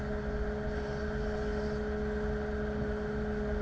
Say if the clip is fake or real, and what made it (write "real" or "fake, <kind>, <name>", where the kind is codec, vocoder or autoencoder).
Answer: real